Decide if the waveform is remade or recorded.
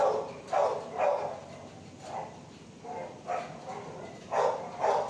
recorded